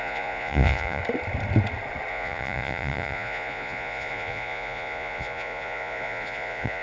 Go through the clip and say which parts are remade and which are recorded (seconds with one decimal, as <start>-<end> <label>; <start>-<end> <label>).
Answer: 0.0-1.0 remade; 1.0-2.1 recorded; 2.1-6.8 remade